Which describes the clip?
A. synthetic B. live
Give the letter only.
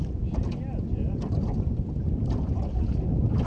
B